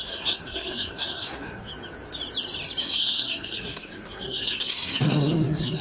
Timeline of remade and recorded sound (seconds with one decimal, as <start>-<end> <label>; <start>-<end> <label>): 0.0-1.7 remade; 1.7-2.8 recorded; 2.8-5.8 remade